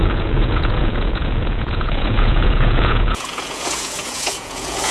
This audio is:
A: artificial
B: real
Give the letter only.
A